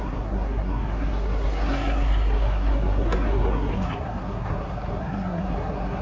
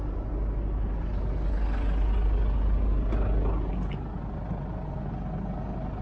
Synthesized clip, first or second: first